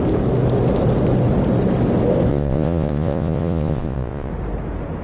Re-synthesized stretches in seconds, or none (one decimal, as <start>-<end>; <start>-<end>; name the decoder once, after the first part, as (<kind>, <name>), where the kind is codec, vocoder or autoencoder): 2.3-4.3 (vocoder, Vocos)